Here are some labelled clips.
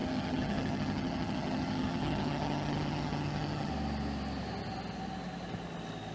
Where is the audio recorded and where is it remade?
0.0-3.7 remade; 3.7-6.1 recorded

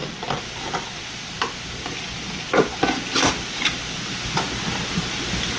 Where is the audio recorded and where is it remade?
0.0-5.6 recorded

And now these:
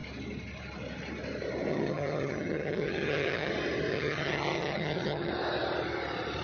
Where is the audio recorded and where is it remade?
0.0-1.7 recorded; 1.7-3.5 remade; 3.5-3.9 recorded; 3.9-5.3 remade; 5.3-6.4 recorded

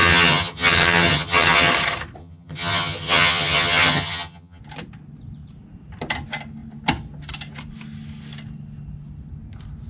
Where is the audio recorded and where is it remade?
0.0-1.7 remade; 1.7-2.2 recorded; 2.2-4.6 remade; 4.6-9.9 recorded

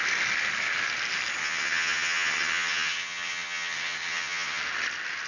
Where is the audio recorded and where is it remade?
0.0-1.4 recorded; 1.4-4.6 remade; 4.6-5.3 recorded

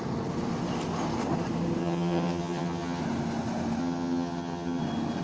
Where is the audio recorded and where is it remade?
0.0-1.8 recorded; 1.8-3.0 remade; 3.0-3.8 recorded; 3.8-4.8 remade; 4.8-5.2 recorded